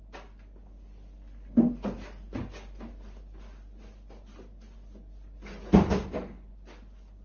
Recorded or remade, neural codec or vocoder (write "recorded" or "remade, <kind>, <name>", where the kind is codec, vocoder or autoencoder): recorded